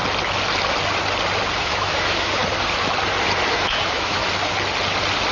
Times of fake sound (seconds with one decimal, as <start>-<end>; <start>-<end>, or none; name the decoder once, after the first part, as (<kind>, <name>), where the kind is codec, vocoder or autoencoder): 1.6-2.4 (autoencoder, DAC-VAE); 3.5-4.2